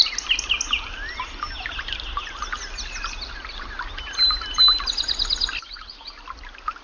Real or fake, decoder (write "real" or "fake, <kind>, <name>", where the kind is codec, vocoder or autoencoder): real